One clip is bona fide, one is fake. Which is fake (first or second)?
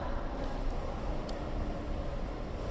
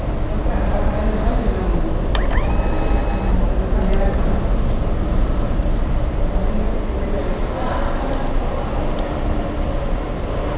first